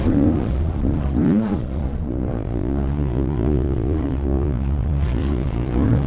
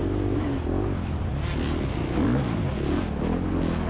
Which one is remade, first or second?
first